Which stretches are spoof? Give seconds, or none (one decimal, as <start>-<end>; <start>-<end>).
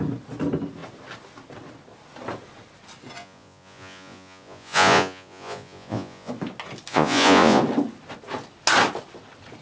3.2-6.3; 6.9-7.6